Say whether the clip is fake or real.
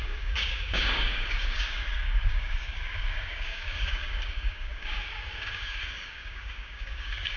fake